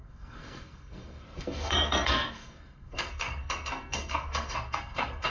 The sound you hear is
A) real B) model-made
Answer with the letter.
B